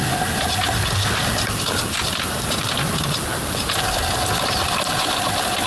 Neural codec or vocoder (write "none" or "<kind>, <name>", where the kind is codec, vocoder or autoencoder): none